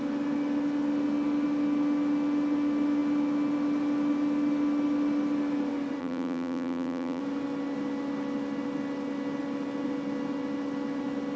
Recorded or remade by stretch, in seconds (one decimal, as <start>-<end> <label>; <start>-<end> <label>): 0.0-6.0 recorded; 6.0-7.2 remade; 7.2-11.4 recorded